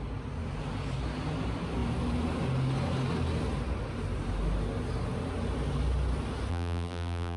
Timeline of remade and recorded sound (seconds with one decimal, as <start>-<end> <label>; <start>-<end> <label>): 0.0-6.5 recorded; 6.5-7.4 remade